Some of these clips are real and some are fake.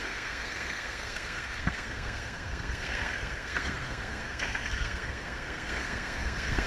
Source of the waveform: fake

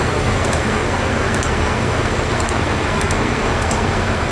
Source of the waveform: fake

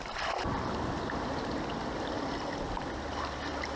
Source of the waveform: real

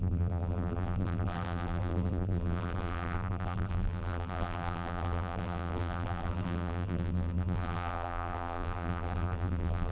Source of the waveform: fake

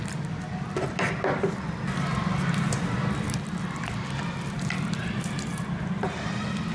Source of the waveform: real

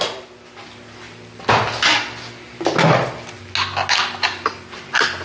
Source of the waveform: real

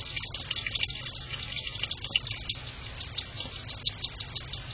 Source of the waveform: real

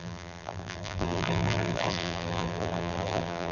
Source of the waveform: fake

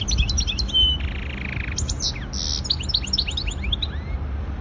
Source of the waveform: real